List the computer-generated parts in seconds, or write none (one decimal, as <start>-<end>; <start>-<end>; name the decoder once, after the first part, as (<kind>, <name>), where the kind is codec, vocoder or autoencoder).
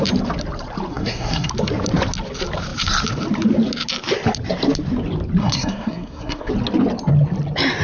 0.9-1.5 (codec, SNAC); 5.4-6.5